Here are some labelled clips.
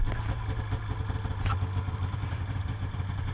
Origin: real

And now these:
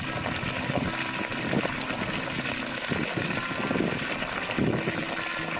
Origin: real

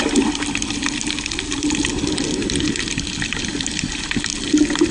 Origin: real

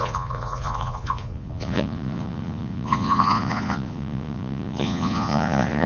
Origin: fake